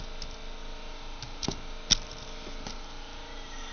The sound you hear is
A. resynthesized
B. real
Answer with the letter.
B